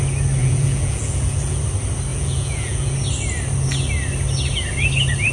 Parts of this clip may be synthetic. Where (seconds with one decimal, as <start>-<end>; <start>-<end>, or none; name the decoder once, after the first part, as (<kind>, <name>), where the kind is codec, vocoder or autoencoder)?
0.4-1.6 (vocoder, Vocos); 2.1-2.9